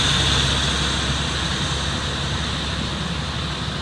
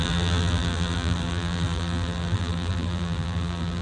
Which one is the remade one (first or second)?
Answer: second